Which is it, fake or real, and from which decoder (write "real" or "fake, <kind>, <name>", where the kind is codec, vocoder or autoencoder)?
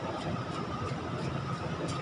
real